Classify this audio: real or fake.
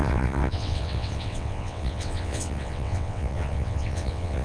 fake